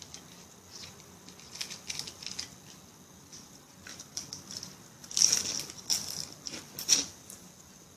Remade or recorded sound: recorded